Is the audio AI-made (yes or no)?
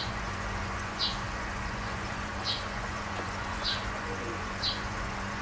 yes